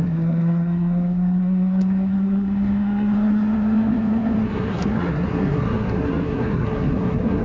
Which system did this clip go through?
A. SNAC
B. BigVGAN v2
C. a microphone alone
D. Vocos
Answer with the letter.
A